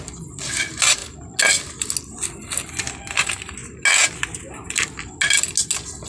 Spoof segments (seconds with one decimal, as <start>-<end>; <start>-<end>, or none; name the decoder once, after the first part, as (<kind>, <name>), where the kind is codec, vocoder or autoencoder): none